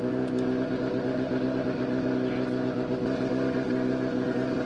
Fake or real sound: real